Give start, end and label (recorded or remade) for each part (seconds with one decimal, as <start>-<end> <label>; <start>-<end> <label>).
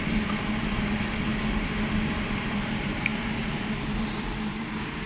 0.0-1.3 remade; 1.3-2.5 recorded; 2.5-5.1 remade